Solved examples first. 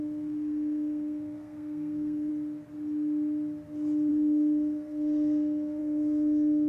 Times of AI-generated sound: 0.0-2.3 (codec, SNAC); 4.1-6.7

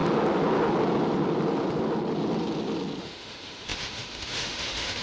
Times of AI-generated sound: 3.0-5.0 (autoencoder, DAC-VAE)